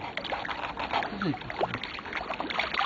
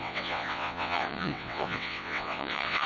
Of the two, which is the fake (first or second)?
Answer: second